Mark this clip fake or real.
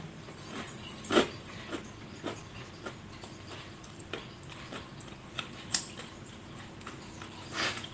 fake